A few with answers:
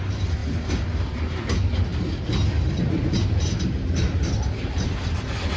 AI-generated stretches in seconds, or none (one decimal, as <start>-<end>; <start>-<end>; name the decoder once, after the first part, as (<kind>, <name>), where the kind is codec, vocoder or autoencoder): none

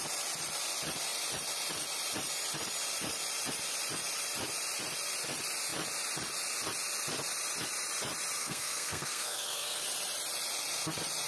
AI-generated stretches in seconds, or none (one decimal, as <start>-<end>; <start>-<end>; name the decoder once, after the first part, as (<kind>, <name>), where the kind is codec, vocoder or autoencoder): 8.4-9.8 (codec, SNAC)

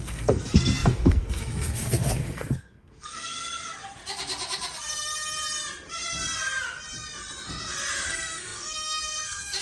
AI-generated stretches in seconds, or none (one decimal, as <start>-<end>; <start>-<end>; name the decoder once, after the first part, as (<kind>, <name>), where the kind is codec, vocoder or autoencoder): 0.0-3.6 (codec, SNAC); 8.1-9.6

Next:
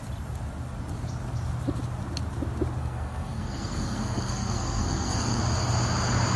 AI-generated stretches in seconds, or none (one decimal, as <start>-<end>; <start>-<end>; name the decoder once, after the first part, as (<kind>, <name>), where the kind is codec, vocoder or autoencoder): 2.8-5.4 (codec, SNAC)